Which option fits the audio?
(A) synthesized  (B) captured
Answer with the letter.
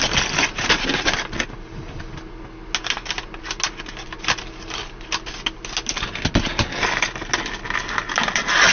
B